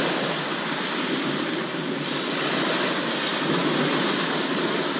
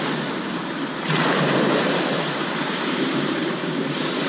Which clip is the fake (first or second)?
second